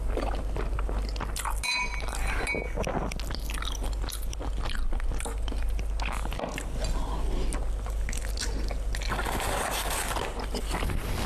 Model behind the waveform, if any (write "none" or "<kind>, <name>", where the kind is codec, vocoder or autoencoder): none